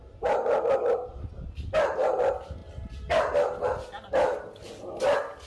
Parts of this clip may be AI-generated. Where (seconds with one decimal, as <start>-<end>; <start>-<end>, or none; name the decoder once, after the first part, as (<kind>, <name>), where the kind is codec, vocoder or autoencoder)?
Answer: none

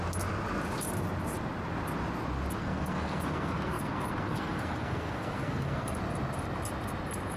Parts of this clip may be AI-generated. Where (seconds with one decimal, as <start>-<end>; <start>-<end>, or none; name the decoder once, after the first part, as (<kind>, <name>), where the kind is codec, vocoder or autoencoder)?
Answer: 2.6-6.0 (codec, SNAC)

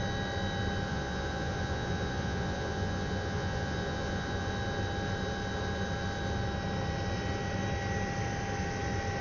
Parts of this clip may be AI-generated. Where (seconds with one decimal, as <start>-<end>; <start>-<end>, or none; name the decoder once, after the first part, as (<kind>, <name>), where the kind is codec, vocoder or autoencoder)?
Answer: 0.9-4.5 (vocoder, Vocos)

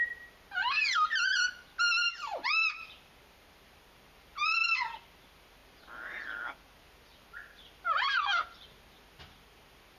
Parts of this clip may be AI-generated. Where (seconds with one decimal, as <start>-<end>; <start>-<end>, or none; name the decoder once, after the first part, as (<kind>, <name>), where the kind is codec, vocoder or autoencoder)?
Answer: none

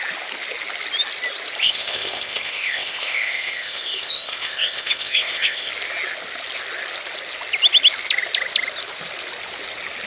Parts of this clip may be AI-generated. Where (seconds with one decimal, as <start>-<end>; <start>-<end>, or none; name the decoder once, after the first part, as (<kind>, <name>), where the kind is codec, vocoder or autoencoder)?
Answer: 1.6-5.7 (codec, ZipCodec)

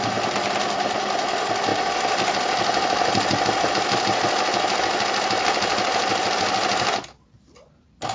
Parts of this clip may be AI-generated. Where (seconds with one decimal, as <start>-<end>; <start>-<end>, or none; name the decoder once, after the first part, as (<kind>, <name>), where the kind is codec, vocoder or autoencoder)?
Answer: none

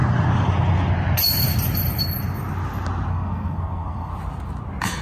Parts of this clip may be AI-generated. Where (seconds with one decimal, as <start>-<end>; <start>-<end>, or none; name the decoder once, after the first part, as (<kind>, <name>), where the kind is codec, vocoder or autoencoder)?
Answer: 3.1-4.1 (codec, SNAC)

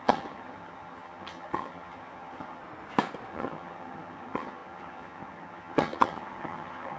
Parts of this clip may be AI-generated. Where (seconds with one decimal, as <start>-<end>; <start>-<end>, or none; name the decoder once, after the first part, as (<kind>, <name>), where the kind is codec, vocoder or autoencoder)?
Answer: 0.0-2.6 (vocoder, HiFi-GAN); 3.3-7.0